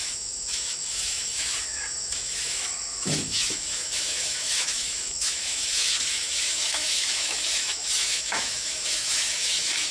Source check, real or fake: fake